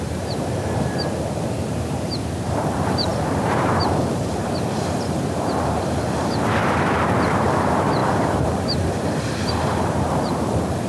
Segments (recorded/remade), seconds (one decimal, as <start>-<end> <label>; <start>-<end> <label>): 0.0-6.6 remade; 6.6-7.6 recorded; 7.6-10.9 remade